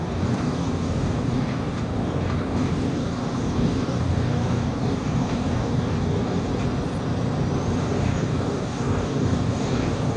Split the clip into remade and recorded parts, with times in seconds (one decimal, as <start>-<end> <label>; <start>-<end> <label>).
0.0-6.5 remade; 6.5-7.8 recorded; 7.8-10.2 remade